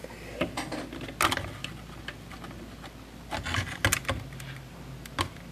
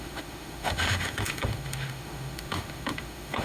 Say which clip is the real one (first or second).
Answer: first